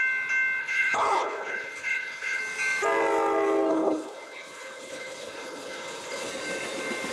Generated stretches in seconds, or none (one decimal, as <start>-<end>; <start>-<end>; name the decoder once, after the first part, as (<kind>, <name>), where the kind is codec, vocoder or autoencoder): 0.6-2.4 (codec, HILCodec); 3.7-6.3